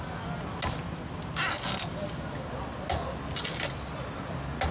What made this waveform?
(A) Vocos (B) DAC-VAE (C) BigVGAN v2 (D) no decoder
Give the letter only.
D